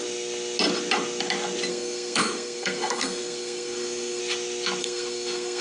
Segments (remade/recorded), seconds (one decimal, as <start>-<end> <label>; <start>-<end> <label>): 0.0-1.7 recorded; 1.7-4.2 remade; 4.2-4.8 recorded; 4.8-5.6 remade